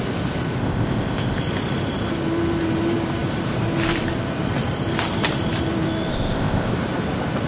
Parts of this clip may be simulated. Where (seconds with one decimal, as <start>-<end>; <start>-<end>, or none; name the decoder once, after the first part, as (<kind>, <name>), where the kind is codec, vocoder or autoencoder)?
0.6-1.4 (codec, ZipCodec); 6.1-6.7